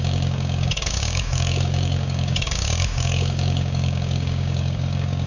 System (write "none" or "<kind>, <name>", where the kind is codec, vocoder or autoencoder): codec, DAC